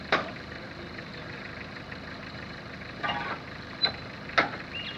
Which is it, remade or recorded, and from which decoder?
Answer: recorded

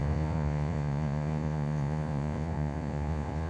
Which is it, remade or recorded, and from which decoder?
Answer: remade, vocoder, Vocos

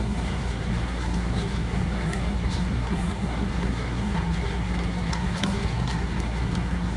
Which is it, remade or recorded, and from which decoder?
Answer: remade, codec, SNAC